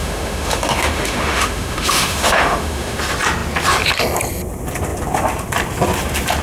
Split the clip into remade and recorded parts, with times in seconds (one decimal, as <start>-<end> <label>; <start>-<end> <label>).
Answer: 0.0-3.0 remade; 3.0-6.4 recorded